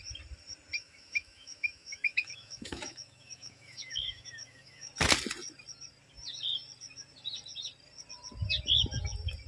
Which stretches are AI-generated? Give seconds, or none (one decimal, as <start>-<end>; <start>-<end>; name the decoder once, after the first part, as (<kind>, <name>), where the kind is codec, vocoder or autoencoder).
0.8-4.9 (autoencoder, DAC-VAE)